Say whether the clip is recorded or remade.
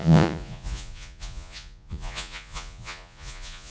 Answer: remade